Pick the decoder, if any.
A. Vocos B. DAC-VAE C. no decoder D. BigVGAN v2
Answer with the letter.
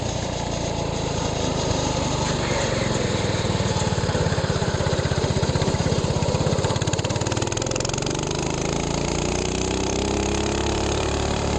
D